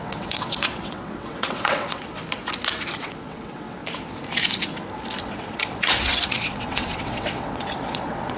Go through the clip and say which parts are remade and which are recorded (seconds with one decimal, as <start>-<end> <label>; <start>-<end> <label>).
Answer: 0.0-2.2 remade; 2.2-3.0 recorded; 3.0-3.8 remade; 3.8-5.2 recorded; 5.2-8.4 remade